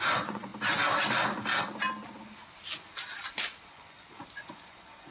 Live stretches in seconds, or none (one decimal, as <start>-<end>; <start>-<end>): 0.5-3.6